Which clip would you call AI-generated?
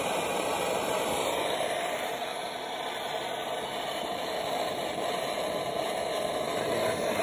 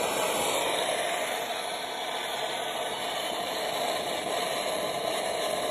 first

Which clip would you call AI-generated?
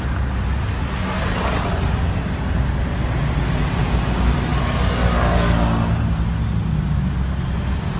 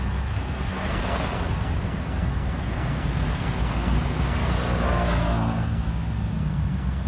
second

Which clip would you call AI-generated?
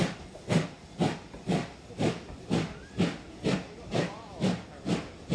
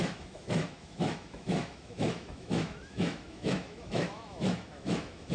second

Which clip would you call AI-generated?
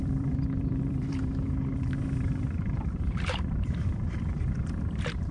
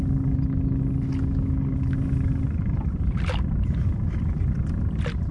first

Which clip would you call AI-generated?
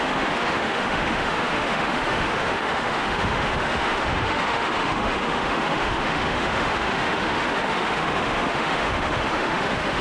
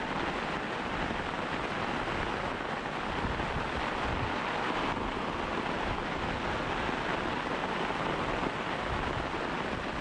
first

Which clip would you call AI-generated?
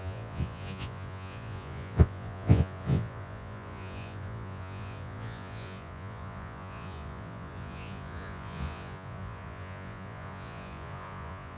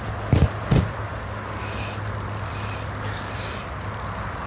first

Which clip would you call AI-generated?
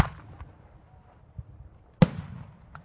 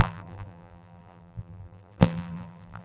second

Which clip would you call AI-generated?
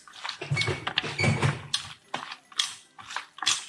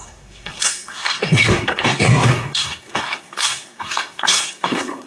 second